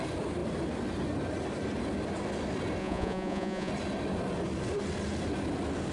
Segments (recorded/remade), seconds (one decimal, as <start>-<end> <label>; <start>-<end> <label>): 0.0-2.8 recorded; 2.8-3.7 remade; 3.7-5.9 recorded